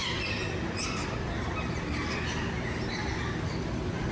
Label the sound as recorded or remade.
recorded